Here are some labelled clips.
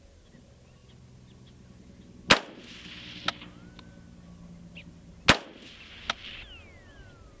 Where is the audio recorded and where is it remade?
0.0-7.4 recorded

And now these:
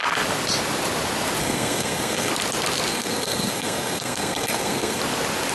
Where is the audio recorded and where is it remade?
0.0-1.4 recorded; 1.4-2.3 remade; 2.3-2.9 recorded; 2.9-5.0 remade; 5.0-5.5 recorded

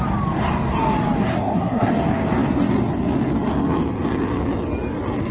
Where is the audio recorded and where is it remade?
0.0-1.3 recorded; 1.3-1.9 remade; 1.9-5.3 recorded

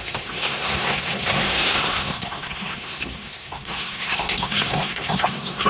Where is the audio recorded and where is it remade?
0.0-5.7 remade